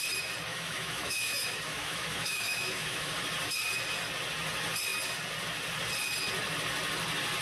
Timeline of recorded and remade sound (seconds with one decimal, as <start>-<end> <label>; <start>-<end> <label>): 0.0-0.5 recorded; 0.5-3.1 remade; 3.1-7.4 recorded